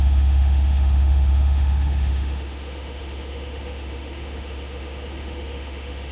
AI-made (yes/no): yes